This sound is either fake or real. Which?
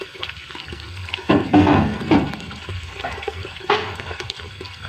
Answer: fake